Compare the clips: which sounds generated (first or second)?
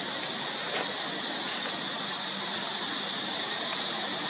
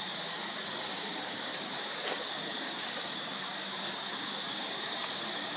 second